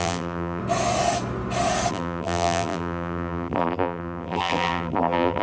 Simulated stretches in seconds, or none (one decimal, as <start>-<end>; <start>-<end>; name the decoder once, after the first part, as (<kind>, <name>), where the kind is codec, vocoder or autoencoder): 0.0-0.6 (vocoder, BigVGAN v2); 1.9-5.4